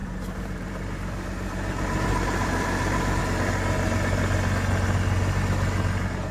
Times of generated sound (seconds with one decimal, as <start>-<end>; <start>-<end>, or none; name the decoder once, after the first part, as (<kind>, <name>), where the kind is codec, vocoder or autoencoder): 0.0-3.2 (vocoder, BigVGAN v2)